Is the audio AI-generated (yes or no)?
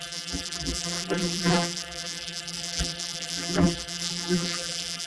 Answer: yes